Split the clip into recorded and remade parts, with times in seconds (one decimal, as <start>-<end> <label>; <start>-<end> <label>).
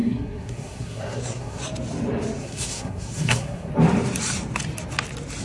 0.0-1.6 remade; 1.6-2.4 recorded; 2.4-3.7 remade; 3.7-5.4 recorded